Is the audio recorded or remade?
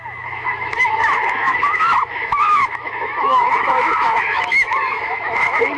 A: remade